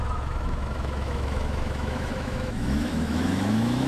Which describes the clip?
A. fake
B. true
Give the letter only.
A